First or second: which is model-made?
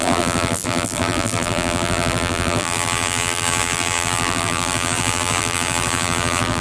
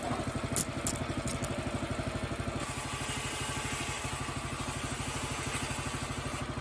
first